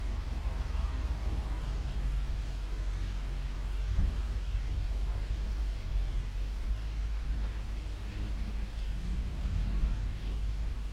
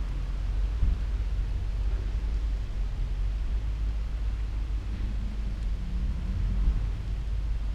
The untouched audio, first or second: second